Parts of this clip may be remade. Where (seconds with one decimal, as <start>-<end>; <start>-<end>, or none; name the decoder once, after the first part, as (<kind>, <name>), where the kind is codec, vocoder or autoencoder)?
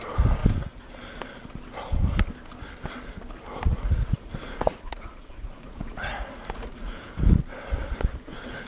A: 3.7-7.0 (vocoder, Vocos)